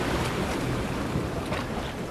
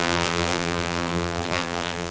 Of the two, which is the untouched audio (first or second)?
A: first